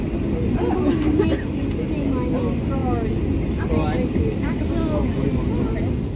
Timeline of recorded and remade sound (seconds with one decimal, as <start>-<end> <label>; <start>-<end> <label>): 0.0-6.2 recorded